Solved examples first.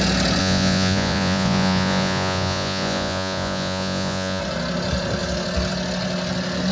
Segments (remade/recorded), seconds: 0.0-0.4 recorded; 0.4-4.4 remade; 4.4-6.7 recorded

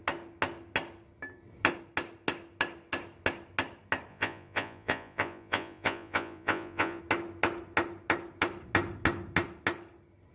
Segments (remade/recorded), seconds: 0.0-4.1 recorded; 4.1-7.0 remade; 7.0-10.3 recorded

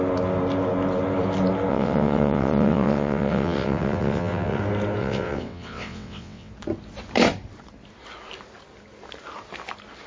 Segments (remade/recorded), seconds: 0.0-1.7 recorded; 1.7-4.6 remade; 4.6-5.0 recorded; 5.0-6.5 remade; 6.5-10.1 recorded

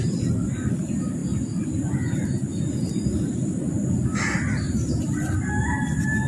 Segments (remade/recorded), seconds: 0.0-6.3 recorded

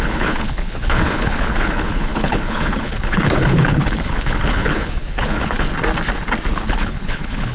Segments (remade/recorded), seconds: 0.0-5.7 remade; 5.7-6.5 recorded; 6.5-7.5 remade